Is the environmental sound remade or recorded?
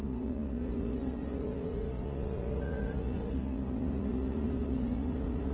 remade